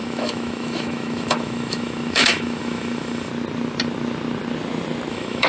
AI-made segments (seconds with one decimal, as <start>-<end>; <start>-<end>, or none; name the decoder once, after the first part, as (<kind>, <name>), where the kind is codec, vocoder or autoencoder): 0.0-3.3 (autoencoder, DAC-VAE); 5.1-5.5